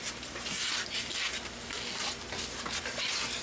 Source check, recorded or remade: recorded